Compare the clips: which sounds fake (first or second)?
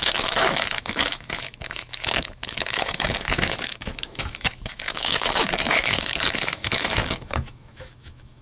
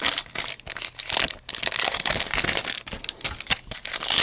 first